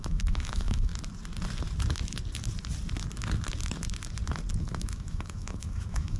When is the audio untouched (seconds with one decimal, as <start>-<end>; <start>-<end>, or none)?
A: 0.9-4.6